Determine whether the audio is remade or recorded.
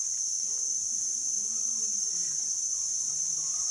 recorded